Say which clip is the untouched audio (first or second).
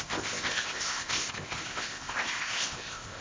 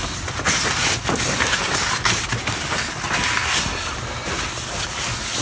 second